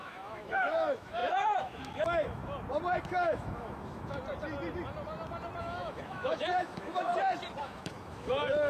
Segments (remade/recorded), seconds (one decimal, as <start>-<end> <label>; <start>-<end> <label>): 0.0-2.4 remade; 2.4-3.0 recorded; 3.0-4.2 remade; 4.2-5.6 recorded; 5.6-7.1 remade; 7.1-7.6 recorded; 7.6-8.7 remade